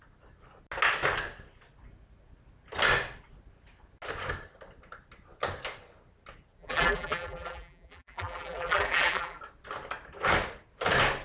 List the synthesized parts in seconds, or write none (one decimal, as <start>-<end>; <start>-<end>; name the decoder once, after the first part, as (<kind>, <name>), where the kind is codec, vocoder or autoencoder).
6.6-9.4 (vocoder, BigVGAN v2)